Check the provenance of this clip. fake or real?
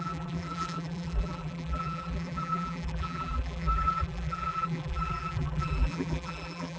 fake